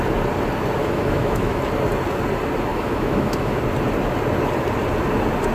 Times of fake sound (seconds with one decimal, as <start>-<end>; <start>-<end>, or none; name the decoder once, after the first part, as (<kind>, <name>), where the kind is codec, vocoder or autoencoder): 0.8-1.6 (autoencoder, DAC-VAE); 2.7-3.6